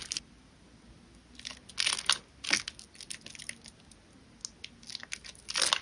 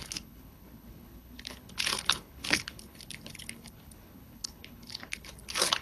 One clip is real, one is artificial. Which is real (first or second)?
first